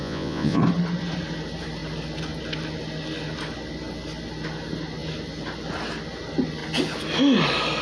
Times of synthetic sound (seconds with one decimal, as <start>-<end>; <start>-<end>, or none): 0.0-0.6